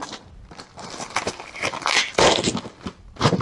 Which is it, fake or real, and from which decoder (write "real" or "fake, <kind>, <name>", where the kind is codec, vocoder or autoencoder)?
fake, vocoder, BigVGAN v2